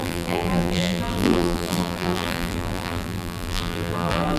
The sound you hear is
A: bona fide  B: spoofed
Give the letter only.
B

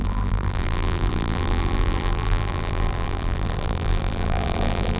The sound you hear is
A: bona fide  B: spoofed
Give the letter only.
B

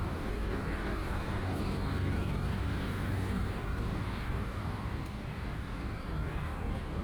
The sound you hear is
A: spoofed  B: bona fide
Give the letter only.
A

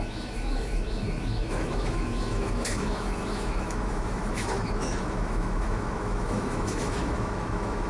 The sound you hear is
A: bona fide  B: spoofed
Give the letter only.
B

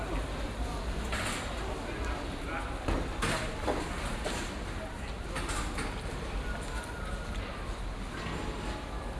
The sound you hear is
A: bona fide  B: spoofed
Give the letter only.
A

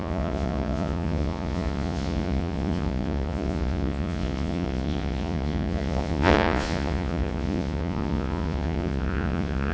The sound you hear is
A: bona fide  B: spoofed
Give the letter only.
B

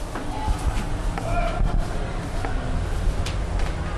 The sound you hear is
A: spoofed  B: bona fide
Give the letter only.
B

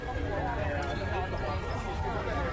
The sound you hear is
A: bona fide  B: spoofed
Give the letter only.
A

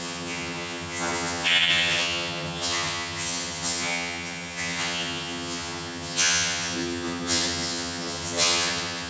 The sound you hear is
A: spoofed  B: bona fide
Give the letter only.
A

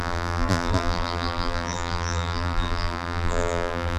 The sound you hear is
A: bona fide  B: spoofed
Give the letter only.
B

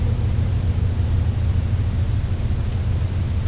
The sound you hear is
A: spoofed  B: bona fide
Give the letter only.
B